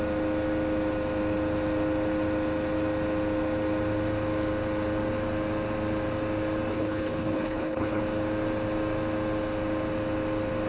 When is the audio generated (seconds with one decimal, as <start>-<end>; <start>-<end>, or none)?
6.7-8.0